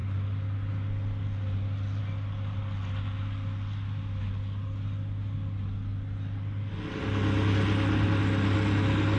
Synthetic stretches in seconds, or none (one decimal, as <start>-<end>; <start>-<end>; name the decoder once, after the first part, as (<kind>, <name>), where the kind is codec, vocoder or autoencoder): none